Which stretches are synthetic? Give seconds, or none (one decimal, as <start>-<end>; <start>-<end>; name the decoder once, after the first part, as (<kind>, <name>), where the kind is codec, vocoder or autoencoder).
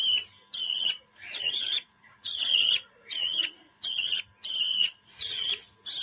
0.6-4.2 (vocoder, Vocos); 4.7-5.5